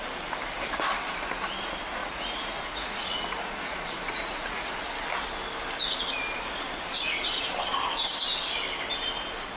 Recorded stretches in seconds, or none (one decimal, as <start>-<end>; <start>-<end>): 0.0-2.0; 4.8-9.6